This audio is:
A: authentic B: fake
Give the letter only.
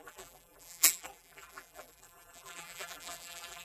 B